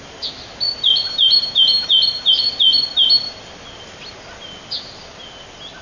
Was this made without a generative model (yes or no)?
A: yes